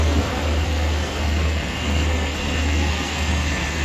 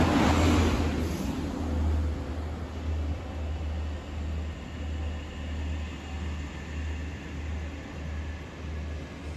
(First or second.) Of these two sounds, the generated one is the first